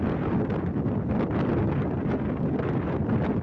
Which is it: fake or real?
real